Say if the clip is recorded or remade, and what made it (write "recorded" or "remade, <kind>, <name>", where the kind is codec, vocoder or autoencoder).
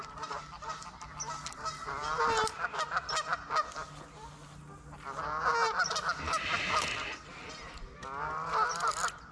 recorded